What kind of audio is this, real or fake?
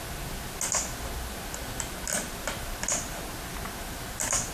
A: real